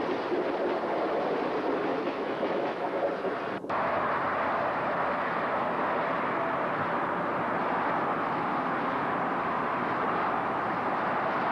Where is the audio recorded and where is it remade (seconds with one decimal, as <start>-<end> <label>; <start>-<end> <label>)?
0.0-1.9 recorded; 1.9-3.0 remade; 3.0-11.5 recorded

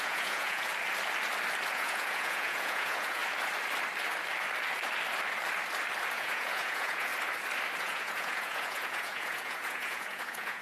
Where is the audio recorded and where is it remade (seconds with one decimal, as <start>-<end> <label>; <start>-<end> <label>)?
0.0-0.7 remade; 0.7-1.7 recorded; 1.7-3.2 remade; 3.2-6.1 recorded; 6.1-7.1 remade; 7.1-7.8 recorded; 7.8-10.6 remade

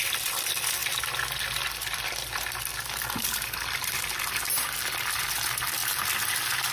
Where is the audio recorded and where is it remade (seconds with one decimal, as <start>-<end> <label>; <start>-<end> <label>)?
0.0-6.7 recorded